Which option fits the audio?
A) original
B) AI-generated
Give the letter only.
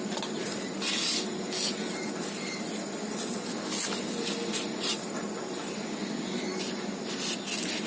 A